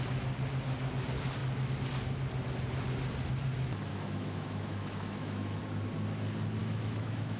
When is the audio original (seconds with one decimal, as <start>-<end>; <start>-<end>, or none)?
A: 0.0-3.9; 5.6-6.6